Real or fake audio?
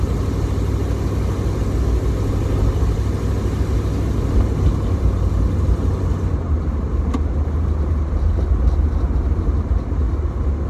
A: real